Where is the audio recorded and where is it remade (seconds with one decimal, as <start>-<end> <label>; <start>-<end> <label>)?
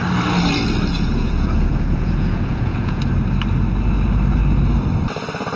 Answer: 0.0-0.9 recorded; 0.9-3.0 remade; 3.0-5.6 recorded